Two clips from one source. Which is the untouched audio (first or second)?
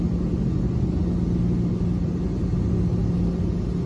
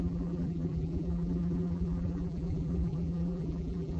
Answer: first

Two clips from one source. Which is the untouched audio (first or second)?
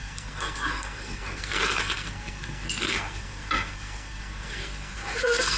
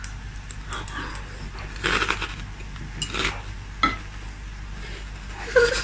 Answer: second